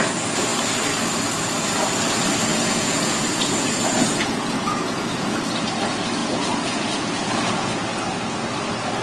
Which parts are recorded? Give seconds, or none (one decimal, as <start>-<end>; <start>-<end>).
0.0-2.5; 5.4-6.2; 7.9-9.0